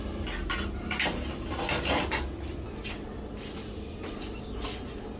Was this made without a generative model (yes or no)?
yes